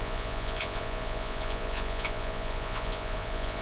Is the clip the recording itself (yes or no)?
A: no